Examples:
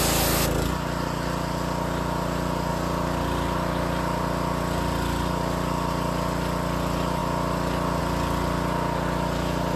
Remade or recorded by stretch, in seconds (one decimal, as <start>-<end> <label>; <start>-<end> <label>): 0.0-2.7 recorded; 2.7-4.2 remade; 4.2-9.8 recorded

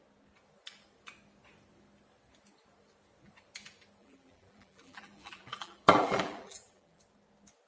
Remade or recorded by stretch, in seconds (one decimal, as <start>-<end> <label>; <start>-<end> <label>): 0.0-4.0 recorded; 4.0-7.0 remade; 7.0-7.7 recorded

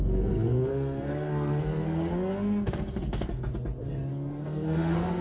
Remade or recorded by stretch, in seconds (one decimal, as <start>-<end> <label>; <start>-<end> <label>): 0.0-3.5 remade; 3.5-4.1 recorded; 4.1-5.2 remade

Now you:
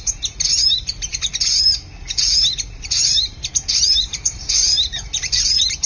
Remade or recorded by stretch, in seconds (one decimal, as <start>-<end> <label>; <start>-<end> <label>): 0.0-1.1 remade; 1.1-2.0 recorded; 2.0-5.9 remade

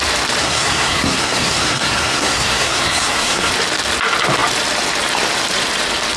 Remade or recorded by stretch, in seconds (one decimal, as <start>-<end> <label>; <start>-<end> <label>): 0.0-0.4 recorded; 0.4-3.5 remade; 3.5-6.2 recorded

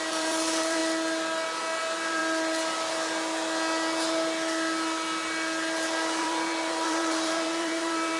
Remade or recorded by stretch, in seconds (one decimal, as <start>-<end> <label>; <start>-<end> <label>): 0.0-0.8 remade; 0.8-1.8 recorded; 1.8-2.2 remade; 2.2-6.2 recorded; 6.2-8.2 remade

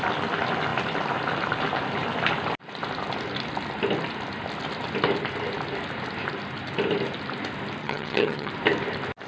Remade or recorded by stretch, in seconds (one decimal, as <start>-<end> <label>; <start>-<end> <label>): 0.0-7.8 recorded; 7.8-8.5 remade; 8.5-9.3 recorded